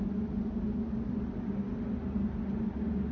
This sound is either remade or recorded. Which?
recorded